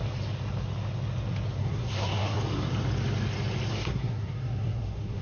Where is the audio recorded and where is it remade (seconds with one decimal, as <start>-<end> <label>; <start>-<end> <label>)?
0.0-1.6 recorded; 1.6-2.4 remade; 2.4-3.7 recorded; 3.7-5.2 remade